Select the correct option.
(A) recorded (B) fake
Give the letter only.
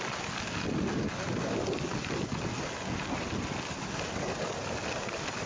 A